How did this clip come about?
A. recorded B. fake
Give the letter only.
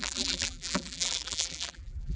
B